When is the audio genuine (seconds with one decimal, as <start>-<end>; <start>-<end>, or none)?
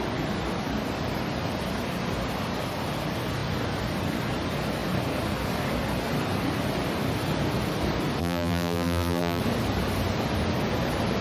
0.0-8.2; 9.4-11.2